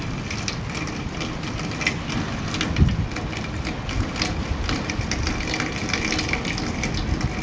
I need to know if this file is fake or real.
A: real